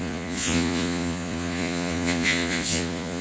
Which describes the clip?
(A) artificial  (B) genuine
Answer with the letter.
A